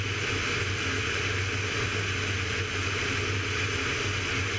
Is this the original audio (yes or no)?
yes